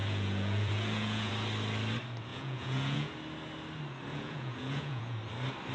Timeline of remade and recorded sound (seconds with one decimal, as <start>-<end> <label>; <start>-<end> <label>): 0.0-1.3 remade; 1.3-2.3 recorded; 2.3-3.1 remade; 3.1-4.1 recorded; 4.1-5.2 remade; 5.2-5.7 recorded